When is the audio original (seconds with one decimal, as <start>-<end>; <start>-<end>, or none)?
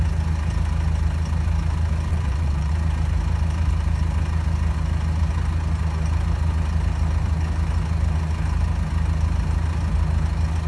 0.0-2.1; 2.7-10.7